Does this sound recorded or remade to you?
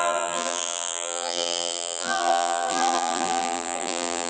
remade